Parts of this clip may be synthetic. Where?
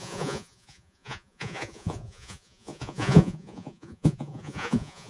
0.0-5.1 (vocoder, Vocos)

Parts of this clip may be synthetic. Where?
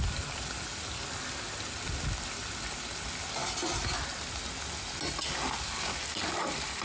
3.4-4.1 (vocoder, BigVGAN v2)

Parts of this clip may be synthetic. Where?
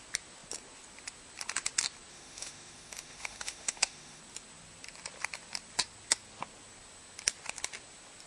2.1-4.2 (autoencoder, DAC-VAE)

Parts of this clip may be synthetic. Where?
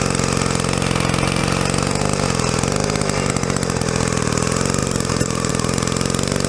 4.8-5.5 (vocoder, BigVGAN v2)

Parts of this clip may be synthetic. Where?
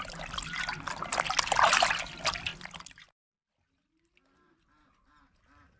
none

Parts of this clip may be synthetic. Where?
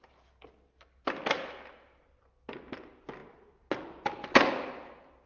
none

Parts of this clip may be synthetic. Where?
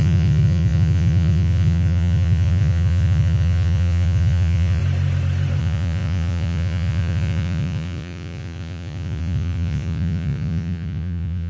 0.0-4.8 (vocoder, Vocos); 5.6-11.5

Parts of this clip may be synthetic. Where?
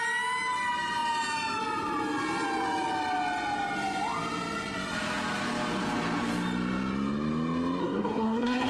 7.8-8.7 (codec, SNAC)